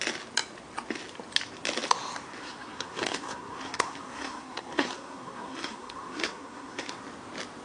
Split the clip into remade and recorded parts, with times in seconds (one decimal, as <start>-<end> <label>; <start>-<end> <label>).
0.0-2.4 recorded; 2.4-7.0 remade; 7.0-7.6 recorded